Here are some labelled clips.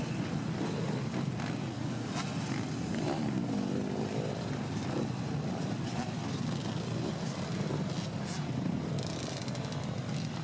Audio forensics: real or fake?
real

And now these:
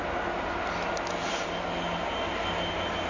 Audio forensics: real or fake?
real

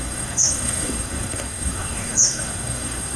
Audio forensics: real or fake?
fake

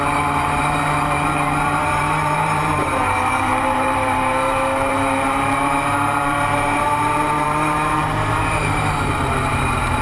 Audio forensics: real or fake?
fake